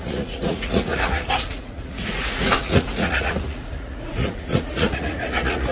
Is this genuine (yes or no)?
no